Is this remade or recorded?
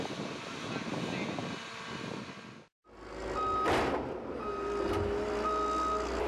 recorded